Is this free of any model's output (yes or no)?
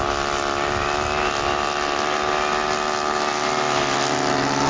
yes